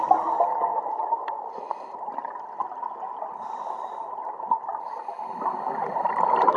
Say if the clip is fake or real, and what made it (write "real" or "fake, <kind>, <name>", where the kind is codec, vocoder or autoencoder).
real